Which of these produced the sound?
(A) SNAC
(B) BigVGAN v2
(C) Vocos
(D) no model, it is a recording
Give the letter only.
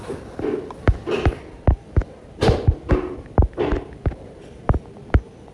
D